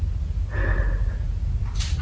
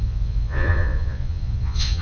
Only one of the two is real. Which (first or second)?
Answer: first